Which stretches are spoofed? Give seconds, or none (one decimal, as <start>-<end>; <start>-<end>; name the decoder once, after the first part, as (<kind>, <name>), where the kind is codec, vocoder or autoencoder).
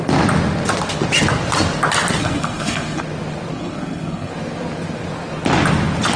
2.2-3.0 (codec, SNAC); 3.5-4.3